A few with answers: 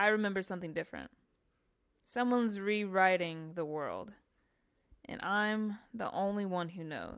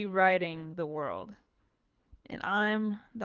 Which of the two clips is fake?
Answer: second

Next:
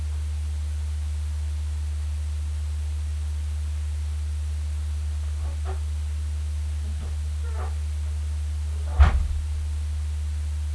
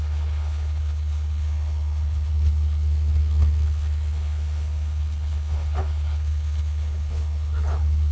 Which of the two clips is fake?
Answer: second